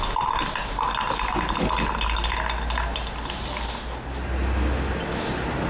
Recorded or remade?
recorded